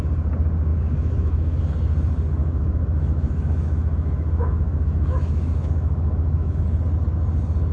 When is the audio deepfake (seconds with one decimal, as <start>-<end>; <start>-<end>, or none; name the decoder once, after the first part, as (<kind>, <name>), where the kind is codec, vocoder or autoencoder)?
0.7-1.6 (autoencoder, DAC-VAE); 2.4-6.6